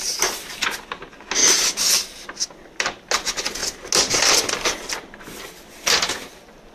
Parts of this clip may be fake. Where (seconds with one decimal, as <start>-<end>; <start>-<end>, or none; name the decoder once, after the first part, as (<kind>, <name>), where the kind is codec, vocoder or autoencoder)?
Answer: none